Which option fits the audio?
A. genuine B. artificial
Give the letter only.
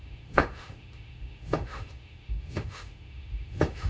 B